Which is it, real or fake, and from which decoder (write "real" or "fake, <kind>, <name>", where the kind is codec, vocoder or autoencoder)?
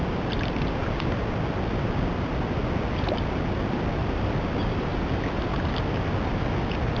real